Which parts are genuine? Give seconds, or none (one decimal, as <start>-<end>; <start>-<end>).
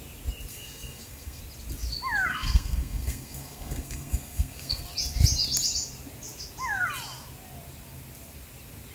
0.0-0.5; 1.4-2.3; 4.8-8.9